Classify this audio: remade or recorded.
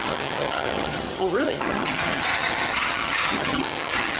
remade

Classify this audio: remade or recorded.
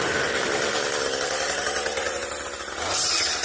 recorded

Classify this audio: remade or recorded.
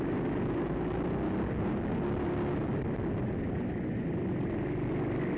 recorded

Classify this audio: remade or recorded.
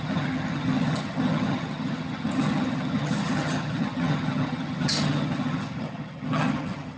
remade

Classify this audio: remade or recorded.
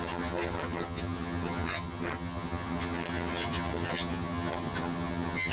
remade